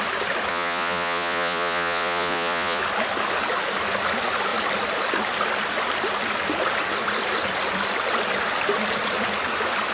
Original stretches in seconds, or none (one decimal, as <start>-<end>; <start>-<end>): 0.0-0.5; 2.8-9.9